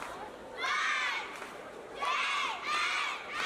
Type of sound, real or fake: fake